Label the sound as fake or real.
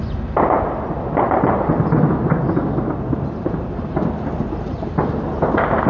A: real